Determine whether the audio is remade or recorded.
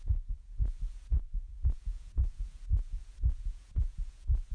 remade